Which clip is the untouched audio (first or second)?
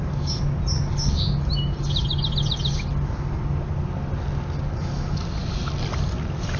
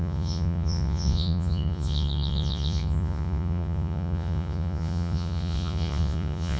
first